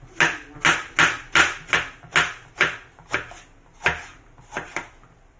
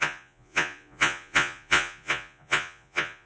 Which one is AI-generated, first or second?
second